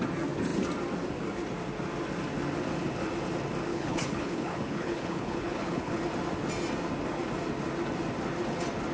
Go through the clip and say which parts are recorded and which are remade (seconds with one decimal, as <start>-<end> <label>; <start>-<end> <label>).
0.0-3.7 recorded; 3.7-6.0 remade; 6.0-8.9 recorded